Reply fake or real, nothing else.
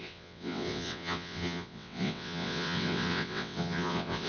fake